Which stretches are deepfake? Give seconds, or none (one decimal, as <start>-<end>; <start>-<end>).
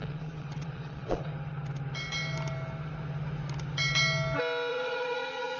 0.0-1.3; 4.7-5.6